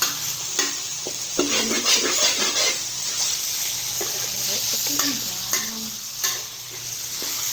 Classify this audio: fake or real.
real